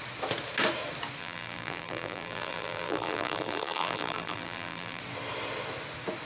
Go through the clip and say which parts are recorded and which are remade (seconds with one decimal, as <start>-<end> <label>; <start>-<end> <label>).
0.0-1.2 recorded; 1.2-5.0 remade; 5.0-6.3 recorded